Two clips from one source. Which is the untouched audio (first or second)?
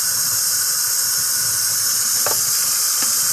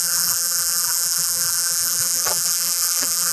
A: first